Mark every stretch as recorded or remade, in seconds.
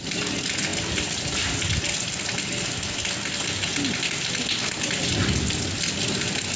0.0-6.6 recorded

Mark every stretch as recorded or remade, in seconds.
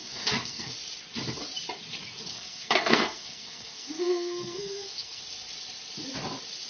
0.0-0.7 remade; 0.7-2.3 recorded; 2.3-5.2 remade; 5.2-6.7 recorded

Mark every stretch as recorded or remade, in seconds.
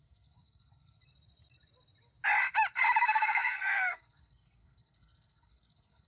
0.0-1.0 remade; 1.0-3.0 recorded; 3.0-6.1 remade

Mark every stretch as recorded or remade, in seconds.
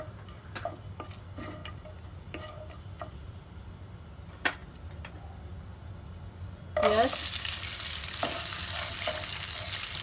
0.0-10.0 recorded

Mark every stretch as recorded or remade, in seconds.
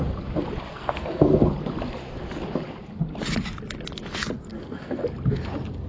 0.0-0.7 recorded; 0.7-1.5 remade; 1.5-4.5 recorded; 4.5-5.0 remade; 5.0-5.9 recorded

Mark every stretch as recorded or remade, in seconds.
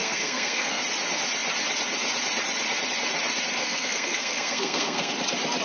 0.0-0.8 remade; 0.8-3.6 recorded; 3.6-5.1 remade; 5.1-5.6 recorded